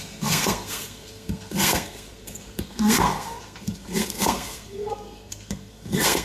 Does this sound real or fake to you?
fake